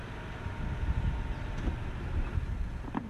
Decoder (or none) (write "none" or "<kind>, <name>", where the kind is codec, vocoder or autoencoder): vocoder, BigVGAN v2